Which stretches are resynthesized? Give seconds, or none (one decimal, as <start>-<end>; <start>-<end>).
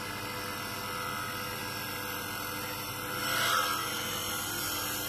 none